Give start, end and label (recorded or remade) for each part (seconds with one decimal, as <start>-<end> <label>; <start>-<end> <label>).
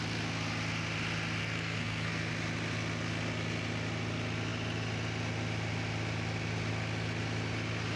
0.0-1.4 recorded; 1.4-2.3 remade; 2.3-8.0 recorded